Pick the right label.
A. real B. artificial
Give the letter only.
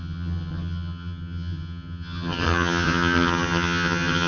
B